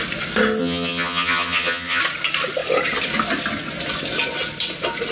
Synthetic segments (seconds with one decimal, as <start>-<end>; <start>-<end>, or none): 0.6-2.0